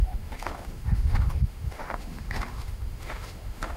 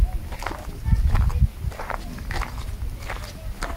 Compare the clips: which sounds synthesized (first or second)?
first